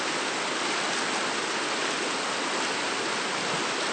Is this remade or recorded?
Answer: recorded